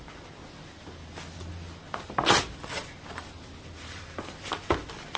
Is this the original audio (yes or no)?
yes